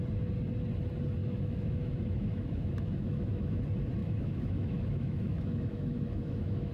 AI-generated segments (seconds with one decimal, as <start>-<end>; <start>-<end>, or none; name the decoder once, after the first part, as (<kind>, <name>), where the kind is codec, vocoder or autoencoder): 1.2-3.6 (autoencoder, DAC-VAE); 4.0-6.7